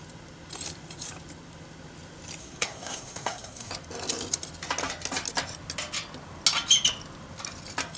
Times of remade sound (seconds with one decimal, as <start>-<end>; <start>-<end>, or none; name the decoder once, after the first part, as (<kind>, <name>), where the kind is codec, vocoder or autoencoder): 2.4-3.7 (codec, SNAC)